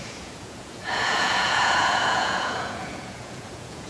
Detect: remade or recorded remade